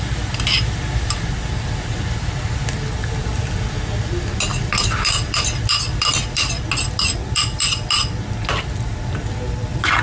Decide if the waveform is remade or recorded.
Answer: recorded